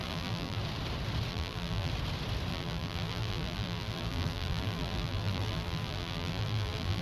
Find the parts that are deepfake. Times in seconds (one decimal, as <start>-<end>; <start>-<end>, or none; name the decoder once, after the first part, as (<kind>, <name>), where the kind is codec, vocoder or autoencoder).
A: 0.0-0.6 (vocoder, BigVGAN v2); 1.3-1.9; 2.5-7.0